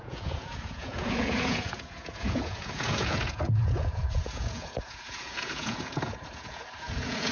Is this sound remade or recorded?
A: remade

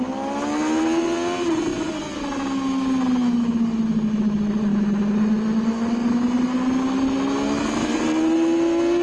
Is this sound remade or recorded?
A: recorded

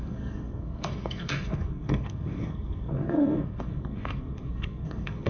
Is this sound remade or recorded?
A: remade